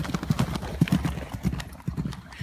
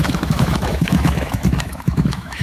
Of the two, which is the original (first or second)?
first